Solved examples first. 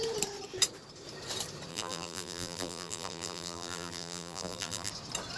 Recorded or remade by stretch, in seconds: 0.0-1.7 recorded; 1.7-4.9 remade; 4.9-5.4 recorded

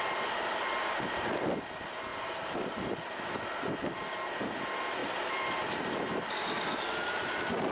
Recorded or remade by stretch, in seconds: 0.0-2.1 recorded; 2.1-2.7 remade; 2.7-5.0 recorded; 5.0-5.7 remade; 5.7-7.7 recorded

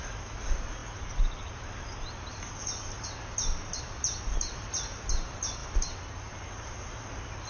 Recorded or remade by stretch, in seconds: 0.0-7.5 recorded

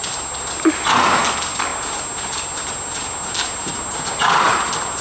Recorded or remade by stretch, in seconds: 0.0-5.0 recorded

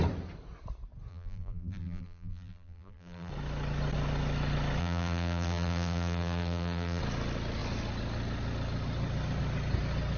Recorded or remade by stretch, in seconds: 0.0-1.1 recorded; 1.1-3.3 remade; 3.3-4.8 recorded; 4.8-7.0 remade; 7.0-10.2 recorded

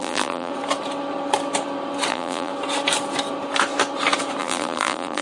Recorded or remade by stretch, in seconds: 0.0-0.5 remade; 0.5-2.1 recorded; 2.1-2.5 remade; 2.5-4.4 recorded; 4.4-5.2 remade